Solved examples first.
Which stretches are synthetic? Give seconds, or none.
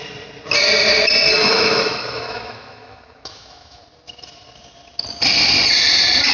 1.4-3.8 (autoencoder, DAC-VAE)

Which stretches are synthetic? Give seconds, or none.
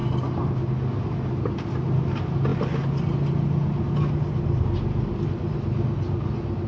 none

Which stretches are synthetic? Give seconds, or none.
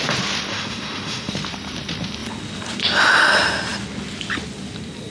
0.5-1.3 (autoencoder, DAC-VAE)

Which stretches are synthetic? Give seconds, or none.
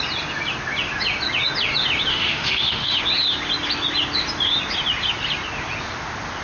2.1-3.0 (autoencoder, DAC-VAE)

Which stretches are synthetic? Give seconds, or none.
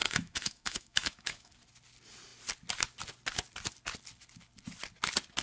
0.0-1.5 (autoencoder, DAC-VAE)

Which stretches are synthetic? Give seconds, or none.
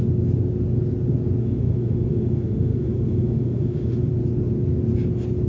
1.4-4.1 (autoencoder, DAC-VAE)